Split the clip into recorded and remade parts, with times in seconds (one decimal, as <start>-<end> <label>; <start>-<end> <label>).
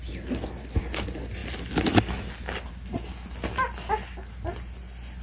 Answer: 0.0-5.2 recorded